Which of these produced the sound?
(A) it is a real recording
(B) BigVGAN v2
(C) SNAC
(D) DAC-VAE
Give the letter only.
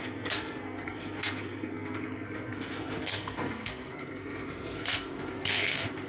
C